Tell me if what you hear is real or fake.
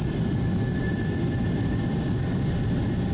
real